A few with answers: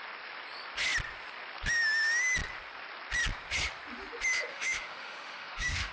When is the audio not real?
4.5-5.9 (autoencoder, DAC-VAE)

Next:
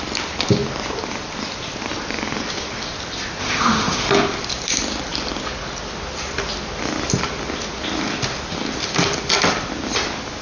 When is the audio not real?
3.4-4.1 (autoencoder, DAC-VAE)

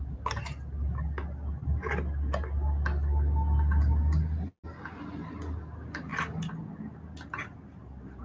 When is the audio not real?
none

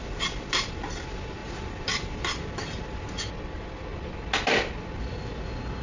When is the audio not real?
0.0-0.6 (vocoder, BigVGAN v2); 1.4-2.8; 3.9-5.0

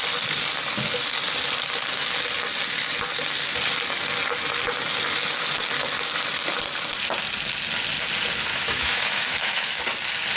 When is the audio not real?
8.5-9.8 (autoencoder, DAC-VAE)

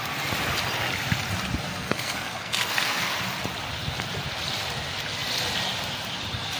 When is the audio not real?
1.7-3.2 (codec, SNAC)

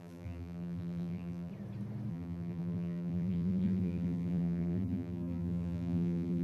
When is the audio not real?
0.0-1.5 (vocoder, BigVGAN v2); 2.1-6.4

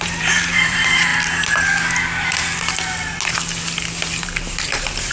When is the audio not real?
0.0-1.1 (vocoder, BigVGAN v2); 4.2-5.1